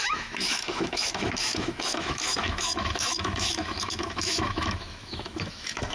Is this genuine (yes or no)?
no